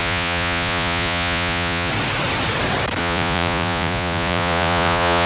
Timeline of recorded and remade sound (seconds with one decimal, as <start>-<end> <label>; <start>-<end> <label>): 0.0-1.9 remade; 1.9-3.0 recorded; 3.0-5.3 remade